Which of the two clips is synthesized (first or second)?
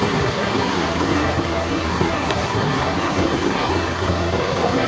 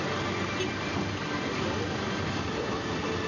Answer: first